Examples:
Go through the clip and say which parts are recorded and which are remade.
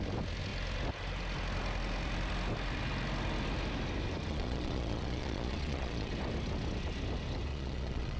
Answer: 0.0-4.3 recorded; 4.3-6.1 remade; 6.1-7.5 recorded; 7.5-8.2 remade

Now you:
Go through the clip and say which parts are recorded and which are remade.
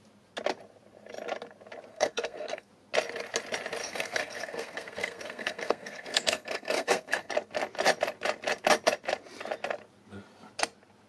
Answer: 0.0-1.9 recorded; 1.9-2.7 remade; 2.7-3.8 recorded; 3.8-7.3 remade; 7.3-11.1 recorded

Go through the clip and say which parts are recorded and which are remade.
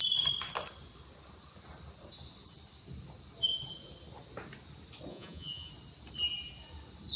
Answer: 0.0-5.1 recorded; 5.1-5.7 remade; 5.7-7.2 recorded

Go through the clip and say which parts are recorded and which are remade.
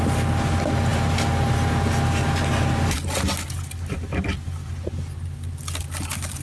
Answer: 0.0-6.4 recorded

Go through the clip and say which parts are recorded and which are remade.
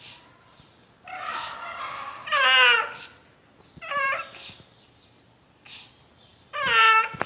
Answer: 0.0-7.3 recorded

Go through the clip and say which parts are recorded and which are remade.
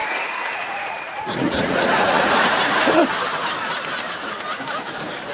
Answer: 0.0-2.9 remade; 2.9-5.3 recorded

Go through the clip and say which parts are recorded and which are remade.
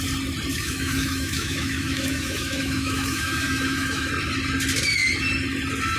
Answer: 0.0-0.5 recorded; 0.5-4.1 remade; 4.1-6.0 recorded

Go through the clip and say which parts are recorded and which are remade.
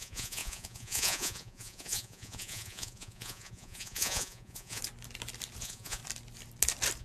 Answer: 0.0-4.8 remade; 4.8-5.6 recorded; 5.6-6.0 remade; 6.0-7.0 recorded